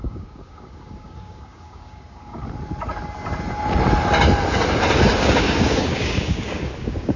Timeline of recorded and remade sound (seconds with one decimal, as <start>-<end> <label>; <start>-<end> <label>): 0.0-2.4 remade; 2.4-5.2 recorded; 5.2-7.2 remade